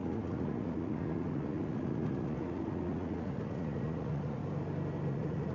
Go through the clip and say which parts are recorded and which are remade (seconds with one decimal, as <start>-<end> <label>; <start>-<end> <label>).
0.0-4.4 remade; 4.4-5.1 recorded; 5.1-5.5 remade